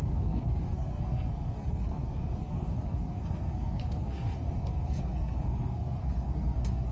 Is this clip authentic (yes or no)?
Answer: no